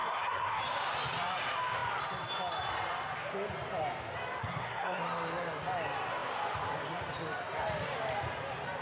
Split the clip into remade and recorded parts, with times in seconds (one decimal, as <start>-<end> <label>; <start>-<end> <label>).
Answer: 0.0-0.6 remade; 0.6-4.4 recorded; 4.4-5.0 remade; 5.0-8.8 recorded